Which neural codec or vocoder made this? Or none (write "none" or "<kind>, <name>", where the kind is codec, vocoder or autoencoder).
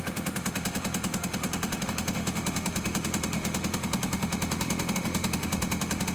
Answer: autoencoder, DAC-VAE